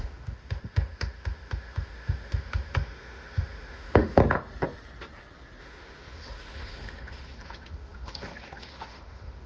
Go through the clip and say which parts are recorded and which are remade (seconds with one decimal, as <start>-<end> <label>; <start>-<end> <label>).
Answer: 0.0-4.2 remade; 4.2-5.6 recorded; 5.6-9.5 remade